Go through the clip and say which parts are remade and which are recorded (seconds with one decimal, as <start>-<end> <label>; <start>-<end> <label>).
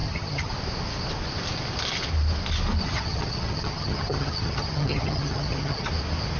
0.0-0.5 remade; 0.5-2.8 recorded; 2.8-5.9 remade; 5.9-6.4 recorded